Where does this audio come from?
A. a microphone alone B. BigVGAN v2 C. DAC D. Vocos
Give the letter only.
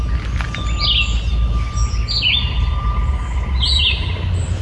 A